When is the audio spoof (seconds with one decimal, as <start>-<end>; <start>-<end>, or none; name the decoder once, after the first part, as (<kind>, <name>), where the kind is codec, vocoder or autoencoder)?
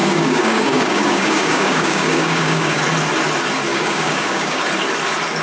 0.0-2.8 (codec, DAC); 3.7-4.6